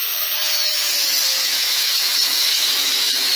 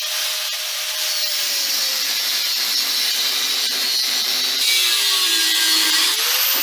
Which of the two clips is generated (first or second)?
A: first